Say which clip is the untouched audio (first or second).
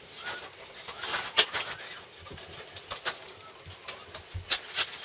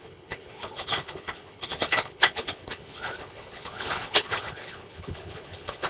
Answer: first